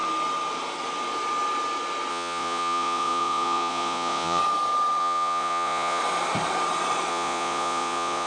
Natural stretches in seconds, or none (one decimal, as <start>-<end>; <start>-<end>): 0.0-2.1; 4.4-5.0; 6.0-7.1